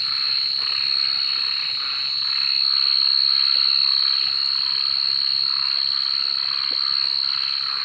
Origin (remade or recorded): recorded